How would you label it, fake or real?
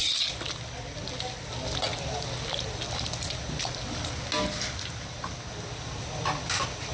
real